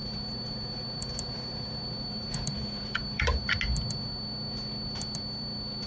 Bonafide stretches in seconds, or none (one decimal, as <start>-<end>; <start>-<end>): 3.5-5.9